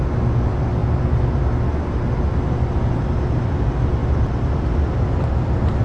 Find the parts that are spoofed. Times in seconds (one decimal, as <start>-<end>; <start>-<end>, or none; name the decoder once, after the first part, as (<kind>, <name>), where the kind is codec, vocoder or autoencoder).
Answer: none